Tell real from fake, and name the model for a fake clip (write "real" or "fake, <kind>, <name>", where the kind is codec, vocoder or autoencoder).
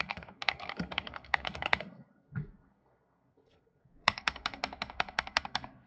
fake, codec, SNAC